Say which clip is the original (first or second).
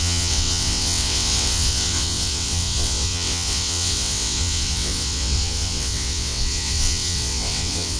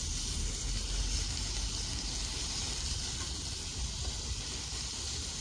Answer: second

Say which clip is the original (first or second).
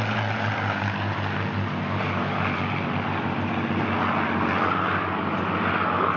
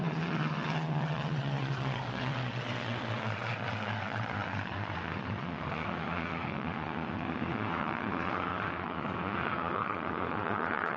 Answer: first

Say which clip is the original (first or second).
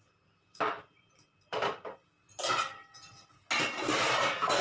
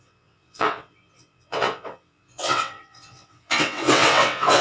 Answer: first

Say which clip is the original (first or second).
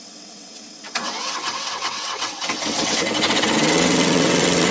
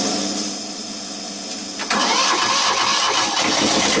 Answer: second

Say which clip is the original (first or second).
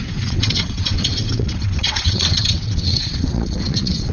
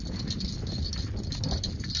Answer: second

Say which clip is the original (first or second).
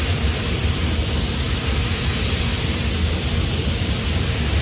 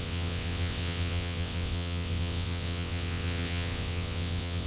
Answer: first